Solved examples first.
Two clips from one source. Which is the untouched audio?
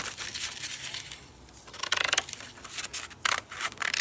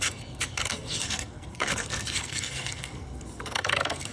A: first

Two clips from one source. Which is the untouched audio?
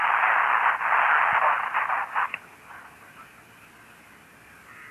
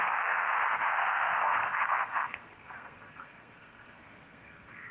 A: first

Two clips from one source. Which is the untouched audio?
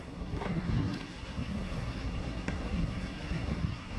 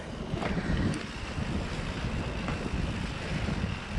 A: second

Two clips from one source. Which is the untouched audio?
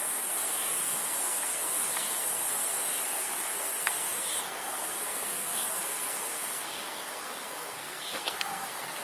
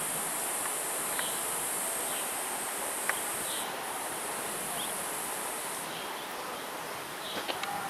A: second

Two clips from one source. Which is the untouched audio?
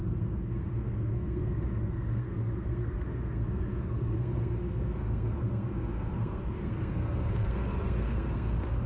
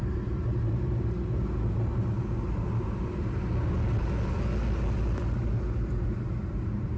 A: second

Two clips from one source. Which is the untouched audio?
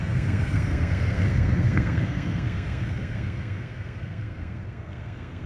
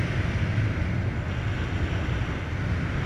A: second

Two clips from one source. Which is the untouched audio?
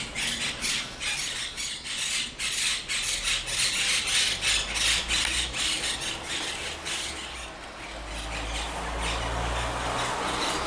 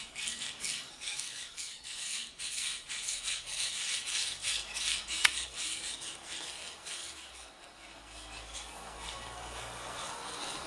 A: first